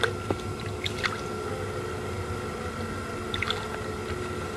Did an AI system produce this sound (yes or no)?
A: no